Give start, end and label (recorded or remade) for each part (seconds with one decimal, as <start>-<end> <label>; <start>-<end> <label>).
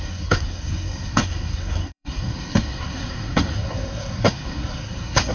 0.0-5.3 remade